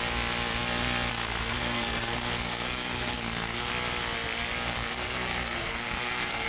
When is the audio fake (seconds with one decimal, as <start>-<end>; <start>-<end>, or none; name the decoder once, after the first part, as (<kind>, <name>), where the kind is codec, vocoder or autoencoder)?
1.1-3.7 (codec, SNAC); 4.7-6.5